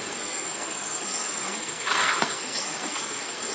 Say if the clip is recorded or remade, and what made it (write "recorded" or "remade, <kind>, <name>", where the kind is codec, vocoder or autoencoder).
remade, codec, SNAC